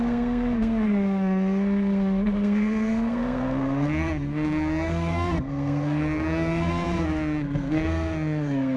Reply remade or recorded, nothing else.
remade